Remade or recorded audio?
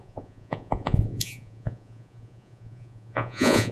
remade